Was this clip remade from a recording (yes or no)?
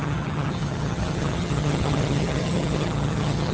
yes